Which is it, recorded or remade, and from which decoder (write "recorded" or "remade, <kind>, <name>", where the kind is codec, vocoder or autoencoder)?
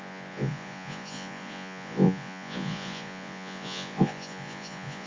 remade, vocoder, Vocos